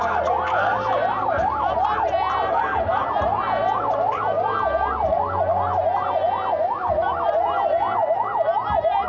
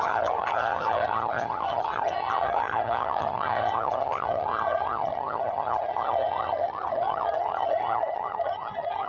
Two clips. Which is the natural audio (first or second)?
first